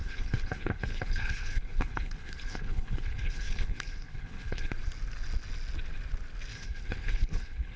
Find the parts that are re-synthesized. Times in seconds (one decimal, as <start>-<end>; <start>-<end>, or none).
0.0-4.7; 6.5-7.8